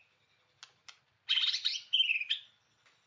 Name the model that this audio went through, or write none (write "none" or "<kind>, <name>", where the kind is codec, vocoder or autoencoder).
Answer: none